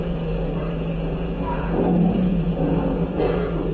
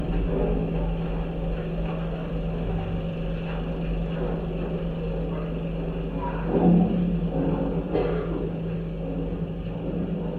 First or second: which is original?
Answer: second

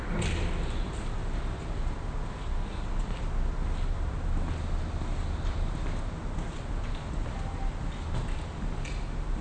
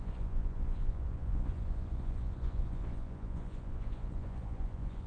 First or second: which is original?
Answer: first